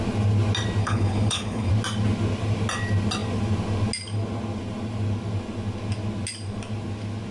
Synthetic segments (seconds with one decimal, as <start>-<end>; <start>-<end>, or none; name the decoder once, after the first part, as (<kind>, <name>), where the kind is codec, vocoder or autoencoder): 0.8-1.7 (codec, HILCodec)